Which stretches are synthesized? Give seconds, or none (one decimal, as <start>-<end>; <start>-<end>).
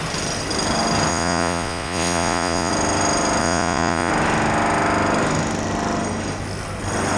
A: 1.1-2.7; 3.4-4.1